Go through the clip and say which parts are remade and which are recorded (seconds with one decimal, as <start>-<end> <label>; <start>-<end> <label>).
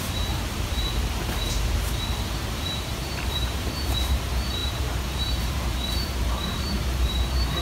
0.0-7.6 remade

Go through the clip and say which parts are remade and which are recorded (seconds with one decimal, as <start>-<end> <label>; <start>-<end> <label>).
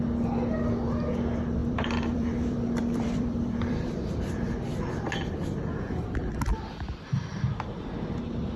0.0-1.6 recorded; 1.6-4.9 remade; 4.9-8.6 recorded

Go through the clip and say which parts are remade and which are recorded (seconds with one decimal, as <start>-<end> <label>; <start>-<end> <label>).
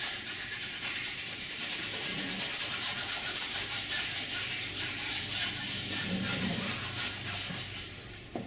0.0-2.1 remade; 2.1-2.6 recorded; 2.6-6.8 remade; 6.8-7.8 recorded; 7.8-8.5 remade